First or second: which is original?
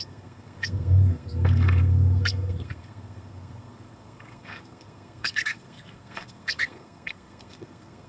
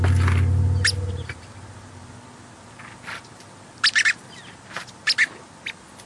second